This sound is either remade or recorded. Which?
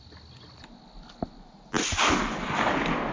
recorded